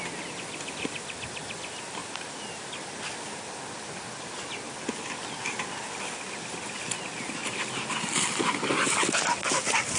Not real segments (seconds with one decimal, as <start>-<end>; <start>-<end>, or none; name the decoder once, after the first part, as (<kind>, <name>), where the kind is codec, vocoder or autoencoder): none